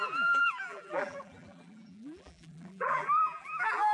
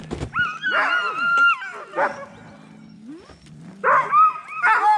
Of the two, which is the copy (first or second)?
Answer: first